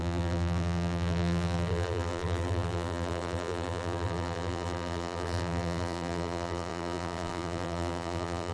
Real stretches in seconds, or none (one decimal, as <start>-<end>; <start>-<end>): none